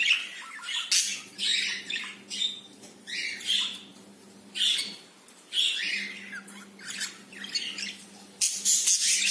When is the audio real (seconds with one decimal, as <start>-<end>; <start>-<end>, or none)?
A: 0.0-1.5; 2.0-9.3